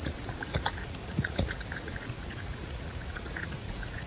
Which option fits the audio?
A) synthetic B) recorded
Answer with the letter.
A